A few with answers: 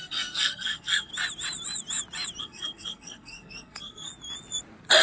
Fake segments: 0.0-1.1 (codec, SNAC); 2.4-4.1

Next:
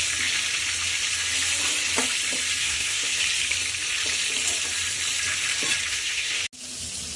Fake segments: 2.6-3.2 (codec, SNAC); 5.9-6.4

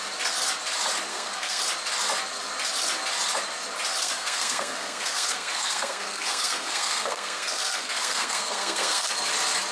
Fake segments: 1.1-1.6 (codec, SNAC); 4.0-9.1